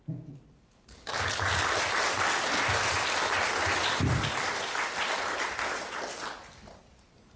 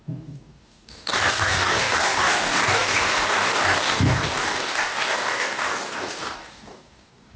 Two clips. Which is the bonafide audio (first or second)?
first